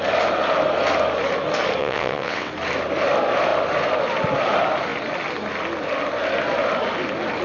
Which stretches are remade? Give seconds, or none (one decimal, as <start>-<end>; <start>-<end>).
1.8-2.5